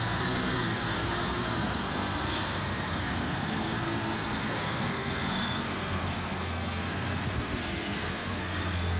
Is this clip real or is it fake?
fake